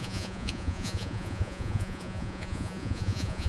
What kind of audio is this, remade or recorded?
remade